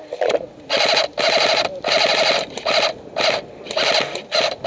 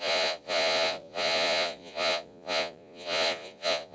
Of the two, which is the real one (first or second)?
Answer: first